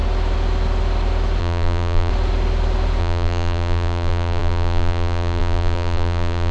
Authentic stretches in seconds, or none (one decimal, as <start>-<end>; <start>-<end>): 0.0-1.4; 2.1-3.0